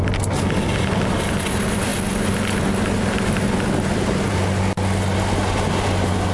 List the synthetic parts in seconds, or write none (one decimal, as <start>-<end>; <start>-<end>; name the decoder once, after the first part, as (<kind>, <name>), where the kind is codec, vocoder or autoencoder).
none